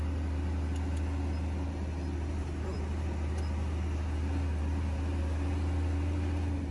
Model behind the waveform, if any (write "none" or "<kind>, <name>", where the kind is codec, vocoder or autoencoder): none